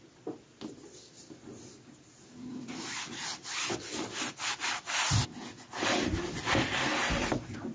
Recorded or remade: recorded